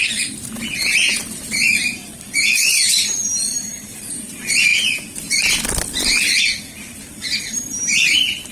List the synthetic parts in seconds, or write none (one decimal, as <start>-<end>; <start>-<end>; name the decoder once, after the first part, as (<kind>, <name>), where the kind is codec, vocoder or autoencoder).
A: 0.0-4.7 (vocoder, BigVGAN v2); 7.4-8.5